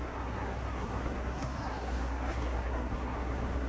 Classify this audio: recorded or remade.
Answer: remade